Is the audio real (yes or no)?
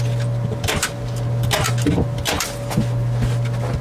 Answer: yes